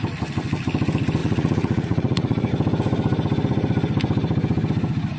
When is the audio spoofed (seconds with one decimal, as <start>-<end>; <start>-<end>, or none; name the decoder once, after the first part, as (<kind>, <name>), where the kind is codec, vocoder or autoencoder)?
1.2-2.5 (vocoder, Vocos)